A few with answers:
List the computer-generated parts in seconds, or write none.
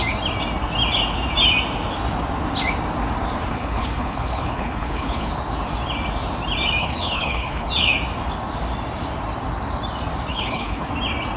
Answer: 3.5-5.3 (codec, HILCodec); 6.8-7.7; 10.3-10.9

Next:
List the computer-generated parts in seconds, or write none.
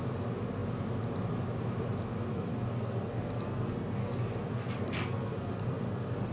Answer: 2.3-6.3 (codec, SNAC)